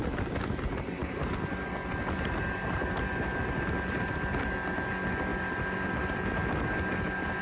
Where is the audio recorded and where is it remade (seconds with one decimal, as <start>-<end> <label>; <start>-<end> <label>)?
0.0-7.4 recorded